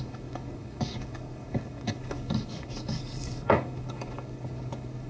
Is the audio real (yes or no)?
no